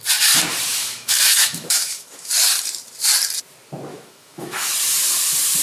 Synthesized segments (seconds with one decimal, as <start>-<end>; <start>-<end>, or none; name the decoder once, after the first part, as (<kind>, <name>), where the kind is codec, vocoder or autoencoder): 0.7-2.3 (autoencoder, DAC-VAE); 3.9-4.7